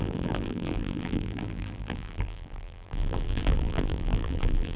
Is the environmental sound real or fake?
fake